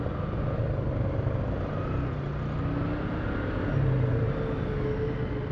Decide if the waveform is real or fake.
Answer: real